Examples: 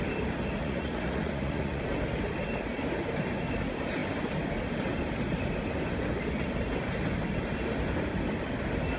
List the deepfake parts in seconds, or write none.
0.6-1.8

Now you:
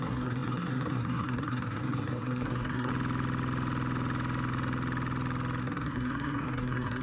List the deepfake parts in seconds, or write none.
0.0-2.9; 5.6-7.0

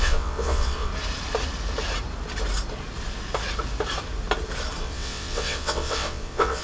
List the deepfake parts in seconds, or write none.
0.0-0.9; 4.8-6.6

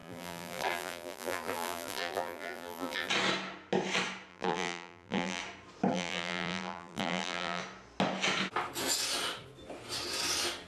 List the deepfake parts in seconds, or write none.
0.0-3.1; 4.3-5.4; 5.9-7.6

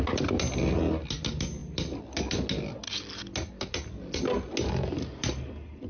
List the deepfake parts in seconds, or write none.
none

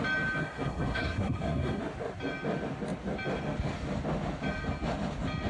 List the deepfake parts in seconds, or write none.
0.4-1.8

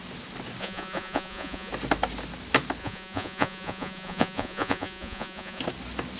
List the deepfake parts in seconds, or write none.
0.6-1.7; 2.8-5.6